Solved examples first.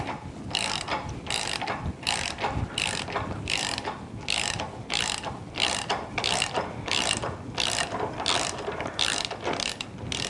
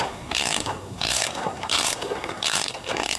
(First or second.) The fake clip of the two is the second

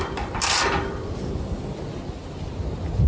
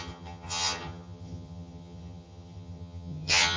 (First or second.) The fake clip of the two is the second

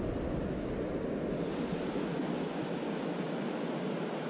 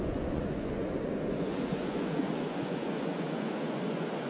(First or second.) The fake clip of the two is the second